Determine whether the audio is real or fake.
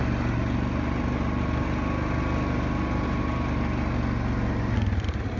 real